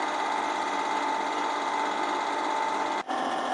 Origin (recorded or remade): recorded